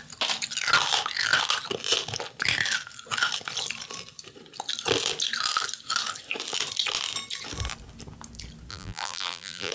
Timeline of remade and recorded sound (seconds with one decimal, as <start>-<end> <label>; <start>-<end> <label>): 0.0-8.7 recorded; 8.7-9.7 remade